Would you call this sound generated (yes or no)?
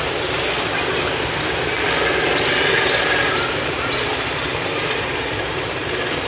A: no